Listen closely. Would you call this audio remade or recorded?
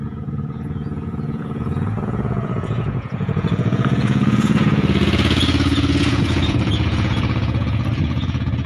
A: remade